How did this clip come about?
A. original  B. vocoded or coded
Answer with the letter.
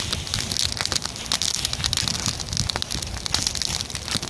A